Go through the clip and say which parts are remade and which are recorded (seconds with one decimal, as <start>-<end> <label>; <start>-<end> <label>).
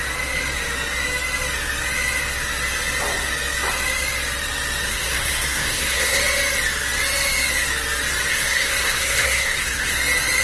0.0-4.9 recorded; 4.9-6.2 remade; 6.2-8.3 recorded; 8.3-9.9 remade; 9.9-10.4 recorded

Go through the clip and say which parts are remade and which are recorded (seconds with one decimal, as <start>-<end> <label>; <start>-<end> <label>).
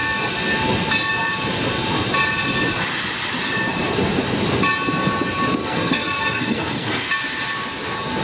0.0-5.6 recorded; 5.6-7.1 remade; 7.1-8.2 recorded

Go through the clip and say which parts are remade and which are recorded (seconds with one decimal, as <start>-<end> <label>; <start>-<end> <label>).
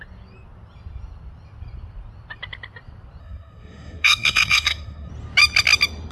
0.0-3.2 recorded; 3.2-5.1 remade; 5.1-6.1 recorded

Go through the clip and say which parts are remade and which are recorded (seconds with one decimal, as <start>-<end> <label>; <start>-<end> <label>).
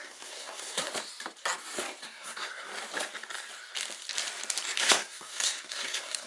0.0-0.9 remade; 0.9-2.0 recorded; 2.0-2.7 remade; 2.7-4.8 recorded; 4.8-6.3 remade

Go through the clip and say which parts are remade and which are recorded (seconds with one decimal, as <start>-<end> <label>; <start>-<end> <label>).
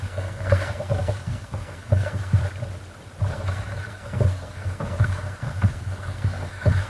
0.0-2.4 remade; 2.4-3.3 recorded; 3.3-6.9 remade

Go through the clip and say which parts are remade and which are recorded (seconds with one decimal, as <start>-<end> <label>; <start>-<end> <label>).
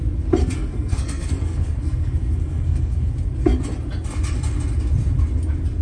0.0-0.4 recorded; 0.4-3.1 remade; 3.1-5.8 recorded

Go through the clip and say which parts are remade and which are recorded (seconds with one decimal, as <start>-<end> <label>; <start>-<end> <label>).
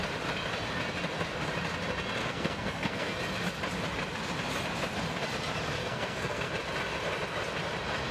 0.0-2.2 recorded; 2.2-3.2 remade; 3.2-5.8 recorded; 5.8-6.5 remade; 6.5-8.1 recorded